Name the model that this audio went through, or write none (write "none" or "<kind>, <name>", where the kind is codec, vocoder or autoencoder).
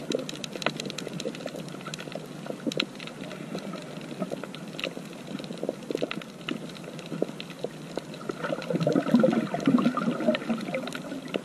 none